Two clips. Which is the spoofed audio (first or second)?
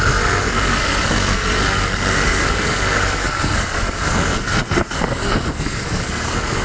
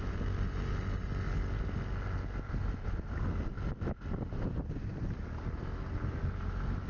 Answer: first